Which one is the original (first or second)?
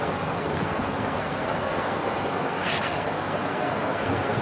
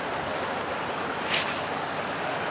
second